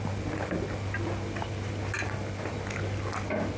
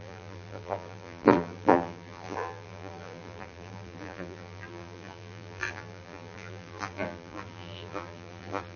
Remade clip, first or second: second